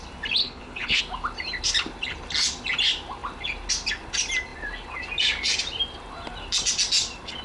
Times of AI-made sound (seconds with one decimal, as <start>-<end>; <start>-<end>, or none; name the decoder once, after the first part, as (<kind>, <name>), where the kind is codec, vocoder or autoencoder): 0.4-1.0 (codec, HILCodec)